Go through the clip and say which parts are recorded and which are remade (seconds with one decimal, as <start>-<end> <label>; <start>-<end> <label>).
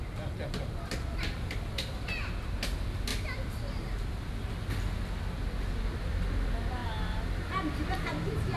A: 0.0-3.1 recorded; 3.1-4.3 remade; 4.3-8.6 recorded